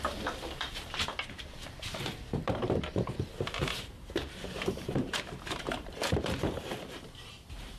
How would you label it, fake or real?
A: fake